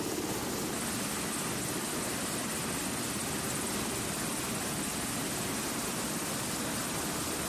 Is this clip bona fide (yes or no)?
yes